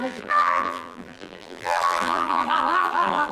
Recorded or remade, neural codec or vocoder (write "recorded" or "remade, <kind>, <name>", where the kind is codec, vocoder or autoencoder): remade, vocoder, BigVGAN v2